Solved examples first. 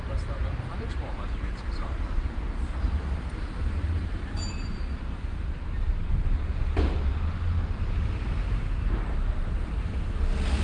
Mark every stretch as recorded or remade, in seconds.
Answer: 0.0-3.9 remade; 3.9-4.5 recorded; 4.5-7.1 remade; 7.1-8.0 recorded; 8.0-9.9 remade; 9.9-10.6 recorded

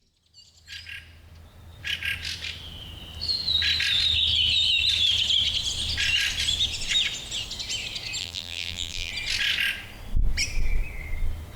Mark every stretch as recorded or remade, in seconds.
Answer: 0.0-8.2 recorded; 8.2-9.1 remade; 9.1-11.6 recorded

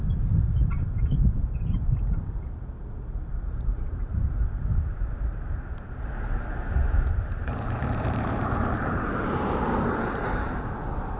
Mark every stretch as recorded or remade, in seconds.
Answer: 0.0-3.3 recorded; 3.3-4.2 remade; 4.2-4.7 recorded; 4.7-9.7 remade; 9.7-11.2 recorded

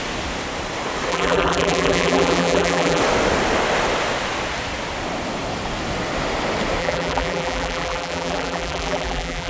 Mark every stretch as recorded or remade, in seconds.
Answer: 0.0-1.1 recorded; 1.1-3.0 remade; 3.0-6.8 recorded; 6.8-9.5 remade